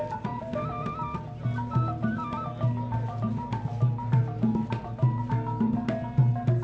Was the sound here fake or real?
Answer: real